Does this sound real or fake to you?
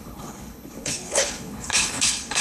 fake